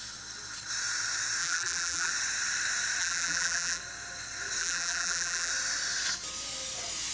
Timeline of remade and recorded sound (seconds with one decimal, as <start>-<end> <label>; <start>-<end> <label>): 0.0-1.4 recorded; 1.4-2.1 remade; 2.1-3.0 recorded; 3.0-3.8 remade; 3.8-4.6 recorded; 4.6-5.5 remade; 5.5-7.1 recorded